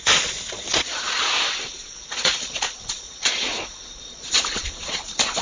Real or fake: fake